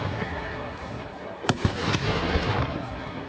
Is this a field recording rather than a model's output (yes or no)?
no